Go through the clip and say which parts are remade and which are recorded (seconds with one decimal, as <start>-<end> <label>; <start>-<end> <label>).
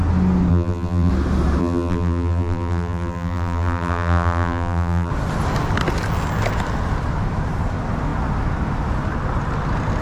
0.0-0.5 recorded; 0.5-1.1 remade; 1.1-1.6 recorded; 1.6-5.1 remade; 5.1-10.0 recorded